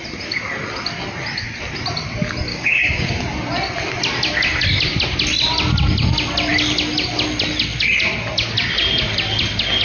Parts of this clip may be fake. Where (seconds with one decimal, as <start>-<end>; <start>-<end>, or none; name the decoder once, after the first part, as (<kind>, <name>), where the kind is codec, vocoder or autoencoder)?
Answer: 2.5-3.1 (codec, DAC)